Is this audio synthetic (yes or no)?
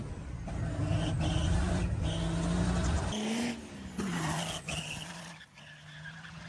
no